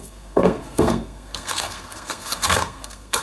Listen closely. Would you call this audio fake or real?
fake